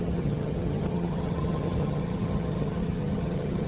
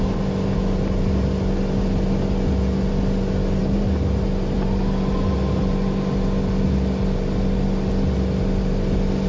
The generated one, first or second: first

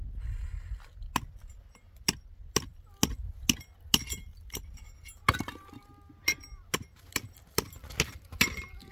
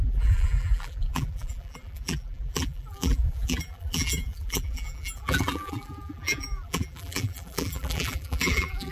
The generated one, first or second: second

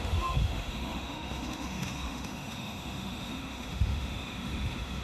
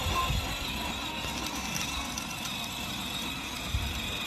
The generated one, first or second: first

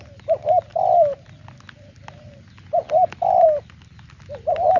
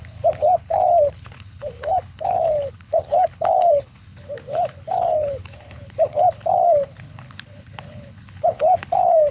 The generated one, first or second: second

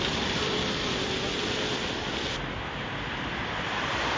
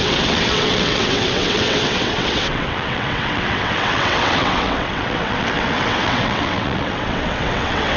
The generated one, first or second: second